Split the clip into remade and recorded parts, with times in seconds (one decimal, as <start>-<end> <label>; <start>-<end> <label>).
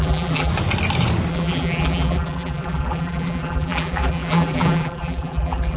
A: 0.0-0.5 remade; 0.5-1.3 recorded; 1.3-5.8 remade